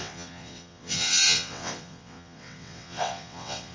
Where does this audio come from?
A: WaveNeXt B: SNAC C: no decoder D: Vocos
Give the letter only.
A